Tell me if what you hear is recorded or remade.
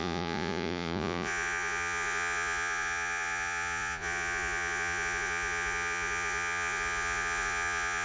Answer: remade